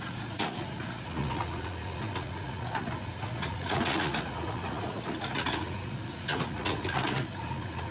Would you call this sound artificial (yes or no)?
yes